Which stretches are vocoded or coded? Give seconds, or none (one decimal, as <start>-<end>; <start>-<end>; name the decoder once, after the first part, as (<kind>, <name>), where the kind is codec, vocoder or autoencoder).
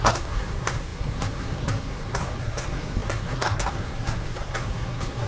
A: 0.0-5.3 (codec, SNAC)